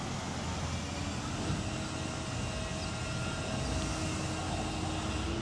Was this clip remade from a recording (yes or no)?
no